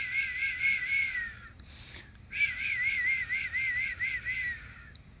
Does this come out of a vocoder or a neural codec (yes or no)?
no